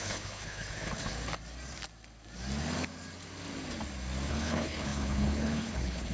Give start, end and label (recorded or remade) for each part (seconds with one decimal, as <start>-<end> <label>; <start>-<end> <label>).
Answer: 0.0-1.1 remade; 1.1-4.3 recorded; 4.3-6.1 remade